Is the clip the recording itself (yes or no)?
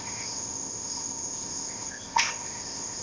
no